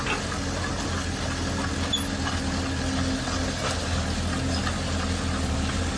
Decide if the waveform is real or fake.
real